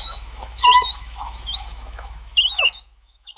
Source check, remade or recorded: remade